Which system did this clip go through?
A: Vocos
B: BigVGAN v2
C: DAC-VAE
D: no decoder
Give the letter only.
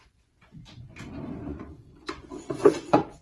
A